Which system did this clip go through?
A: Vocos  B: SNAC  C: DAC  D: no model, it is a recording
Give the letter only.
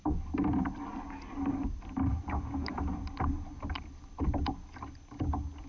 D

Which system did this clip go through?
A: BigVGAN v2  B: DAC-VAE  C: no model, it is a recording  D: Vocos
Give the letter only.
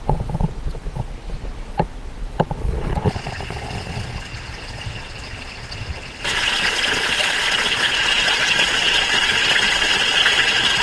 D